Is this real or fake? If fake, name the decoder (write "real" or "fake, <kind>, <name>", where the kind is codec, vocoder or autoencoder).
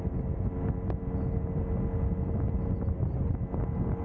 real